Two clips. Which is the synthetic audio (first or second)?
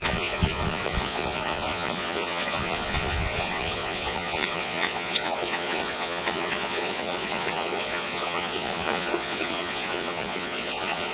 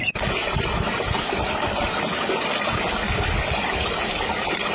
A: first